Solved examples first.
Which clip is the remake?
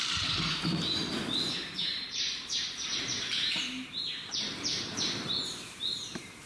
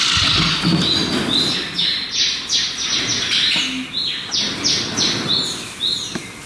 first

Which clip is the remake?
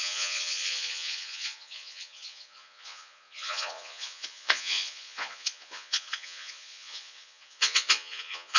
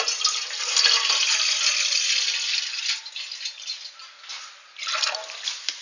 first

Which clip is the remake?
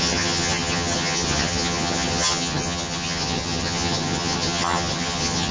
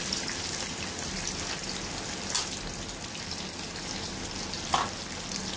first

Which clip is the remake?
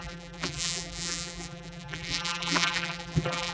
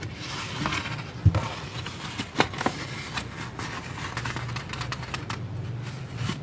first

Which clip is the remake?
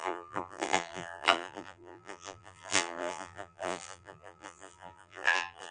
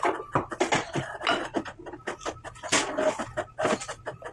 first